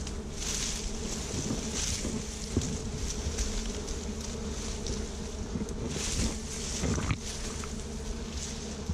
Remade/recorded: recorded